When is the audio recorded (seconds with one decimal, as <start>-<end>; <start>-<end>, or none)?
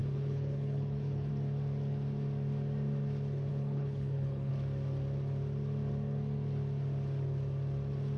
1.3-3.5; 4.5-8.2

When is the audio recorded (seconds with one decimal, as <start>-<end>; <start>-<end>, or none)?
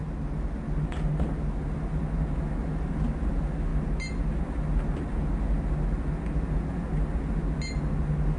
0.0-8.4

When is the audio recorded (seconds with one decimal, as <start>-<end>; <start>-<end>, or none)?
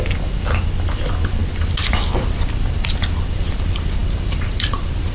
0.0-5.1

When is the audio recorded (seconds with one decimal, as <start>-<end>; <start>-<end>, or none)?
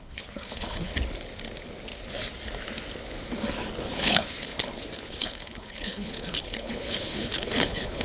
0.9-3.9; 4.5-5.0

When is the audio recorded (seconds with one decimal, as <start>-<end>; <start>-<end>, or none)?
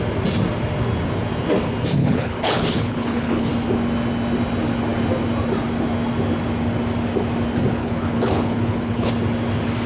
0.0-2.0; 3.5-7.8; 9.1-9.9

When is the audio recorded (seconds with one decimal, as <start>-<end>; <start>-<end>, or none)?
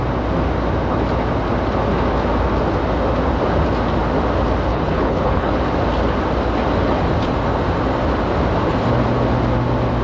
0.0-4.7; 5.6-10.0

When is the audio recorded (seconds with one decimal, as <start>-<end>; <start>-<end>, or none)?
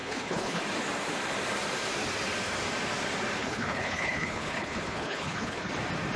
0.6-3.4; 5.7-6.2